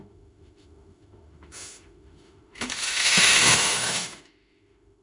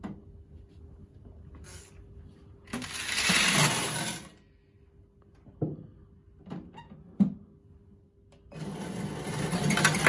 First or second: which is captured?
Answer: second